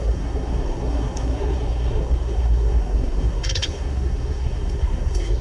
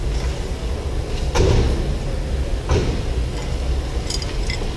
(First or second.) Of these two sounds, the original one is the second